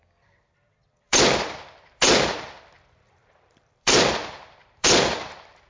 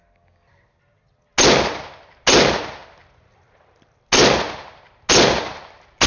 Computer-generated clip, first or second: first